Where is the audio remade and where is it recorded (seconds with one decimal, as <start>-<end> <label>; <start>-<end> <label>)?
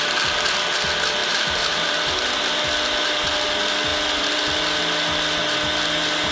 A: 0.0-1.2 recorded; 1.2-2.6 remade; 2.6-6.3 recorded